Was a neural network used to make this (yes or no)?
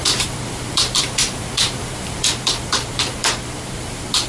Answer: yes